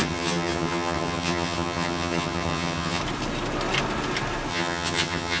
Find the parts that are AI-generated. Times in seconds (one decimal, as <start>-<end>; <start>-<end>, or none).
0.0-3.0; 4.5-5.4